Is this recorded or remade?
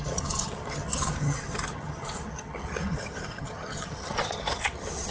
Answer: remade